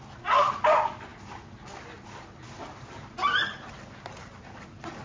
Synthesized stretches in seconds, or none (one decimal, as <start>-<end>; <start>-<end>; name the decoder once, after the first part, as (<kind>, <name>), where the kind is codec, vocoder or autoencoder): none